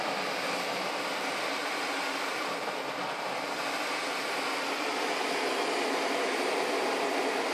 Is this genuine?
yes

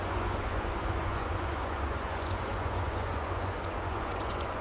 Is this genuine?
no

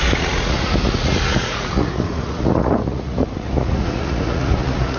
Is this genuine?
no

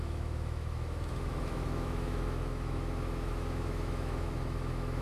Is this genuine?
no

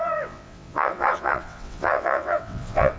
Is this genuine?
no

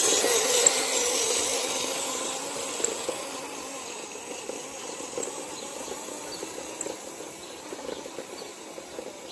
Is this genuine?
yes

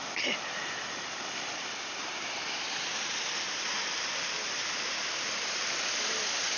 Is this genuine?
no